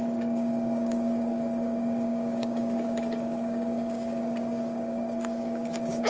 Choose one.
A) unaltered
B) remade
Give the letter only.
B